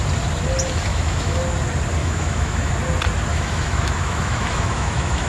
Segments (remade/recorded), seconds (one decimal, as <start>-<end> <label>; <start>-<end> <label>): 0.0-0.9 recorded; 0.9-1.4 remade; 1.4-2.0 recorded; 2.0-2.7 remade; 2.7-3.3 recorded; 3.3-5.3 remade